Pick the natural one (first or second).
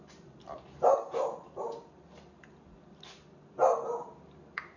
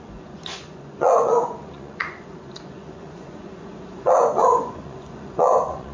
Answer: first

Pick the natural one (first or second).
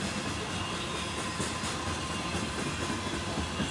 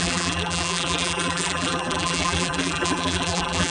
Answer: first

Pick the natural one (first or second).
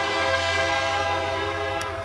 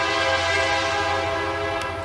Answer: second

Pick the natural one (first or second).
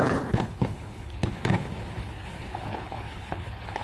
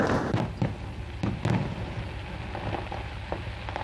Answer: second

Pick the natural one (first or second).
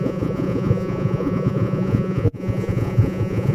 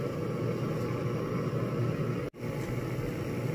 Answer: second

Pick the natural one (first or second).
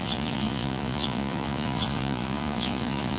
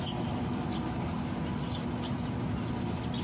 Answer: second